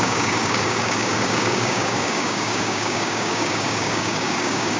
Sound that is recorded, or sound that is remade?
remade